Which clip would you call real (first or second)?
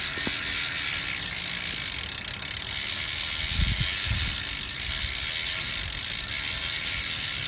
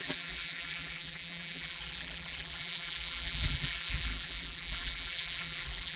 first